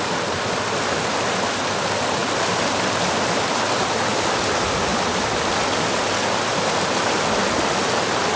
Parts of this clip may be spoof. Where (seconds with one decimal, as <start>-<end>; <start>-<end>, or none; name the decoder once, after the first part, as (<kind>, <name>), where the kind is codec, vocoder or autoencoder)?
none